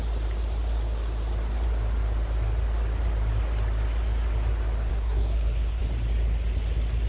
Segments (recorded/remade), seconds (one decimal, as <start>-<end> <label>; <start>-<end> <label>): 0.0-4.9 recorded; 4.9-5.8 remade; 5.8-7.1 recorded